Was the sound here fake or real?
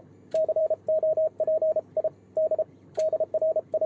fake